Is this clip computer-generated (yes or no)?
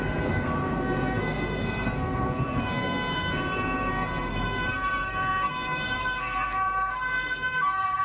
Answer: yes